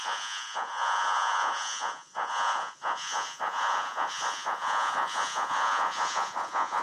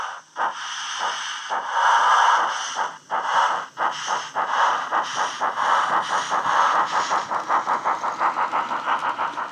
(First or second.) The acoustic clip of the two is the second